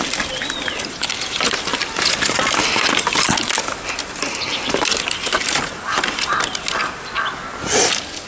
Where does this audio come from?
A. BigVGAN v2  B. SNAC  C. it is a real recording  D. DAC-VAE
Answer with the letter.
C